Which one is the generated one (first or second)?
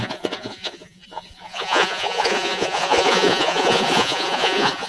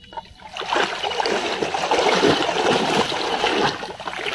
first